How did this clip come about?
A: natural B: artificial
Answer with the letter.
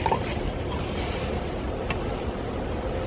A